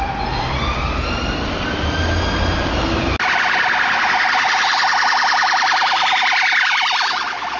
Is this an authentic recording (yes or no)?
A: yes